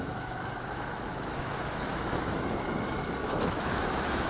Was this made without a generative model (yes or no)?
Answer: no